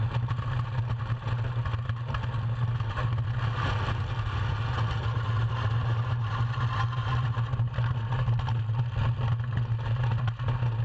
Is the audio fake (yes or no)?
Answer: no